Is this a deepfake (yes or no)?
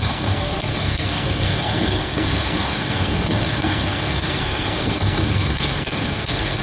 yes